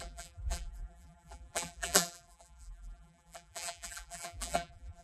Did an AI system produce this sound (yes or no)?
yes